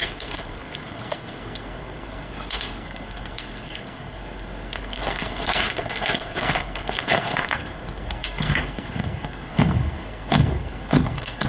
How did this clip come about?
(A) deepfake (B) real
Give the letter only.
A